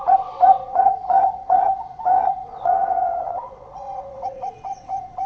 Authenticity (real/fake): fake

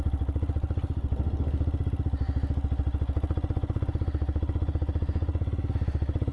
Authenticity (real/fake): real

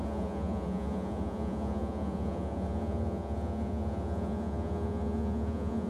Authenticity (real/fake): fake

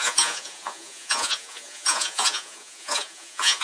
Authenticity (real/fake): fake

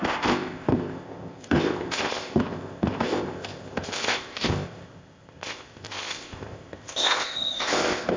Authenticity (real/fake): fake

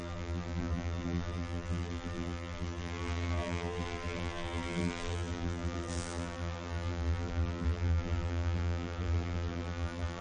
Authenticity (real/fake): fake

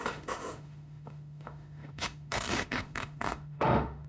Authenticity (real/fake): fake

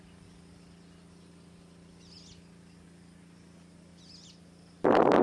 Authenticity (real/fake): real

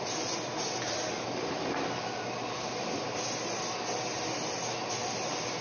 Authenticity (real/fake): real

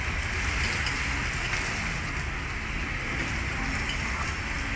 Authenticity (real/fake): real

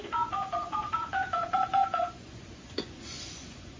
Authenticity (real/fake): fake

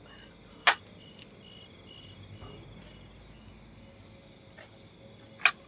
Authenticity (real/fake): real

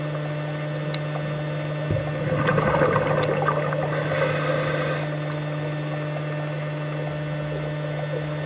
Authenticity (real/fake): real